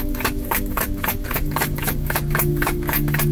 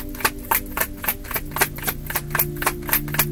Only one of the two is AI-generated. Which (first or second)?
first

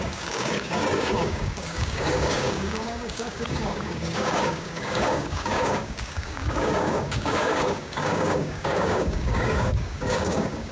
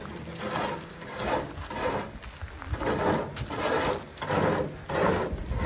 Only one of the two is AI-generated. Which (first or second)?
first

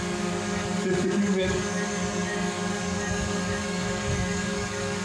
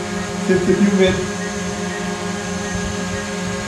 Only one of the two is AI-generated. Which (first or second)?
first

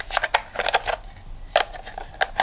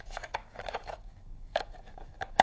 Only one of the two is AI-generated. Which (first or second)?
second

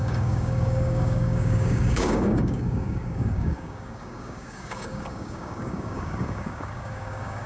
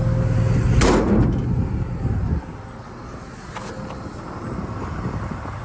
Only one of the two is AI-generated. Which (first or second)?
first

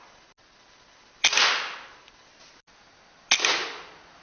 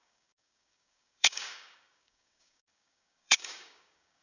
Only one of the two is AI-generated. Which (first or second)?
second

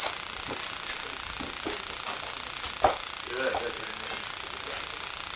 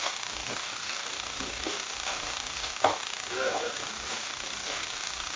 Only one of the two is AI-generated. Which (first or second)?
second